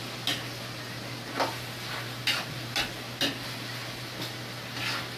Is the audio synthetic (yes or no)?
no